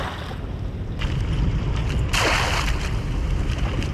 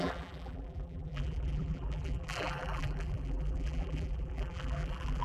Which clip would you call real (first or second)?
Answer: first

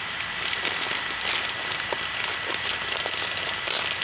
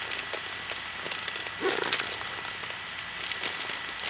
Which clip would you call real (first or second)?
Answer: second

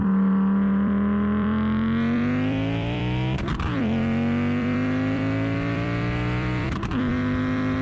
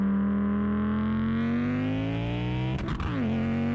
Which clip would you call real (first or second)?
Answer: second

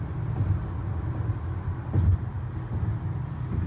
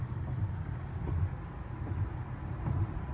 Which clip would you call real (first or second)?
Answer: first